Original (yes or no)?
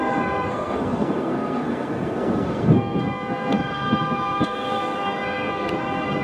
no